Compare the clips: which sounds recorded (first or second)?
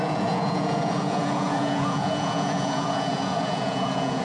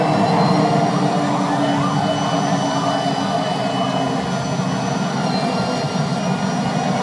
second